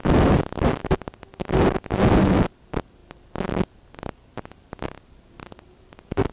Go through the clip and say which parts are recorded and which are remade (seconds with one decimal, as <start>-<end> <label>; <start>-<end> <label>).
0.0-6.3 recorded